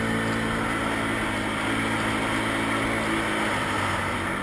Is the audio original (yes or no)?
yes